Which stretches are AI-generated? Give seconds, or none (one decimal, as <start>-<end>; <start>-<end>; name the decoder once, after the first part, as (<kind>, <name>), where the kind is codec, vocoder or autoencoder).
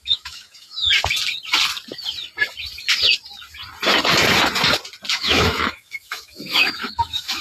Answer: 0.0-0.9 (autoencoder, DAC-VAE); 5.1-7.4